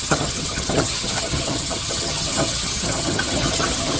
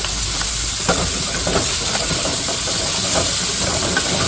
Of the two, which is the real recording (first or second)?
second